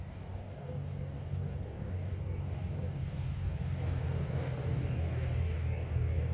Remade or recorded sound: remade